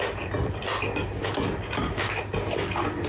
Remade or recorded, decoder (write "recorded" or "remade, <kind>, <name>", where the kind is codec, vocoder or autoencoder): recorded